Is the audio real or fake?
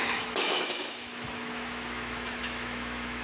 fake